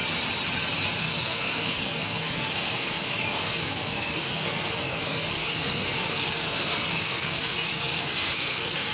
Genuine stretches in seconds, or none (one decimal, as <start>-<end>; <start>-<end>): 0.0-1.0